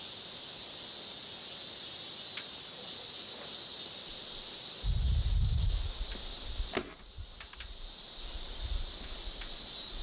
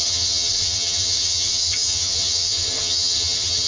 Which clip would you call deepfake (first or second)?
second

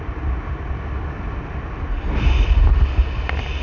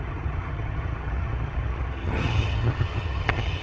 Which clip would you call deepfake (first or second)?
second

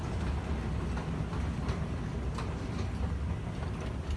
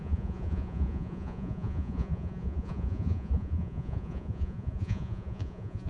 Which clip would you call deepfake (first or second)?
second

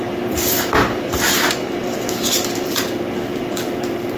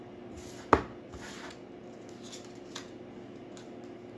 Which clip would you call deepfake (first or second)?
first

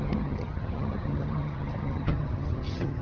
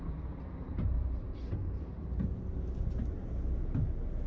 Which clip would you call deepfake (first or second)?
first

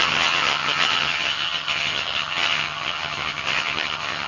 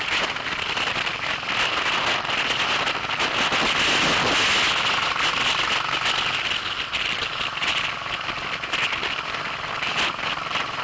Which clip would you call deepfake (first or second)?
first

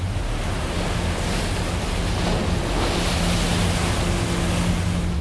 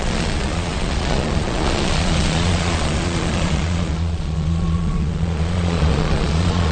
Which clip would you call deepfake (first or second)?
second